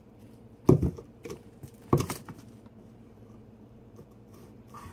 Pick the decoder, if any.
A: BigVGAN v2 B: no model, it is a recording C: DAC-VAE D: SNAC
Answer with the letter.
A